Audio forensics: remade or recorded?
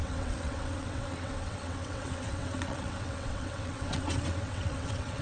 remade